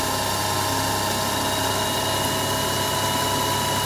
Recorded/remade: recorded